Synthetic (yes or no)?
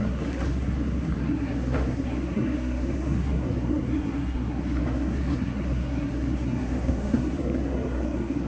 yes